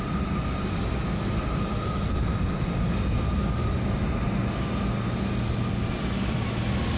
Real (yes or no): yes